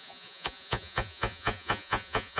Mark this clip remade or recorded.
remade